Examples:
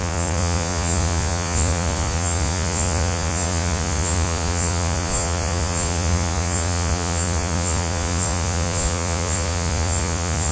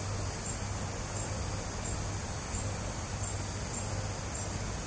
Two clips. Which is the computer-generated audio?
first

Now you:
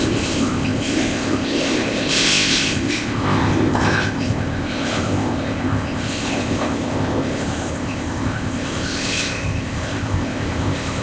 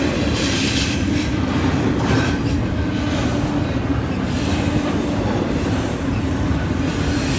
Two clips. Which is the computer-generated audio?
first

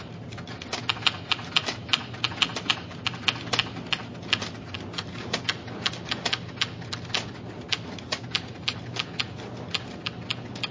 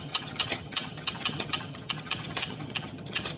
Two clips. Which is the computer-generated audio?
second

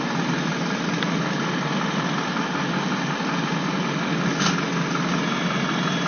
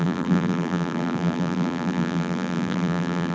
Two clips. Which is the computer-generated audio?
second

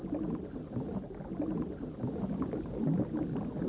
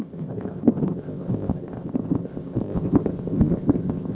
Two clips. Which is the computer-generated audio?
second